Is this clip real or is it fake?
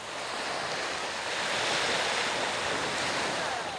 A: real